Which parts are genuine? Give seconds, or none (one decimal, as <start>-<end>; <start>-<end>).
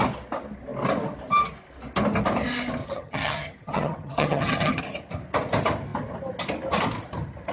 0.0-2.8; 4.8-7.5